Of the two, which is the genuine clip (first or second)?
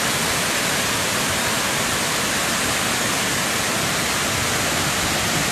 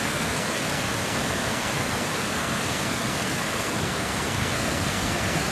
first